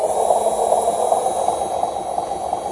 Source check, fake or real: real